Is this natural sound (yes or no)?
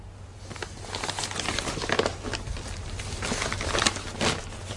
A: yes